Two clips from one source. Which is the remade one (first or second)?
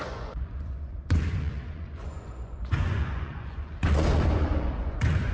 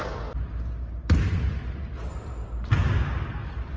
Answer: first